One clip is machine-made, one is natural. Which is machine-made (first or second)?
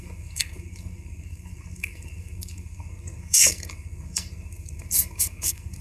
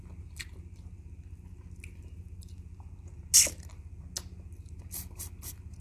first